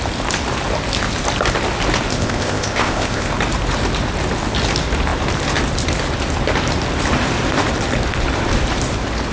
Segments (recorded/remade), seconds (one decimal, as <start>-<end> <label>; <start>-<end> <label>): 0.0-2.1 recorded; 2.1-3.3 remade; 3.3-9.3 recorded